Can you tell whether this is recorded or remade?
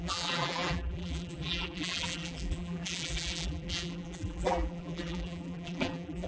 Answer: remade